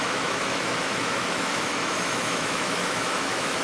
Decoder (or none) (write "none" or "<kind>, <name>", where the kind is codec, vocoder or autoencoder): autoencoder, DAC-VAE